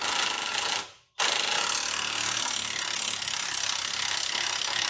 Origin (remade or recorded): recorded